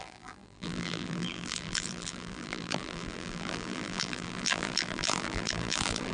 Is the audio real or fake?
fake